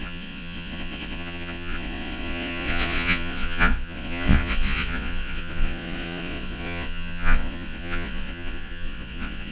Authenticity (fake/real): fake